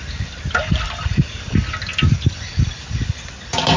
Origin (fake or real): real